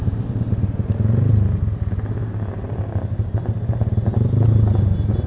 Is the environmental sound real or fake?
real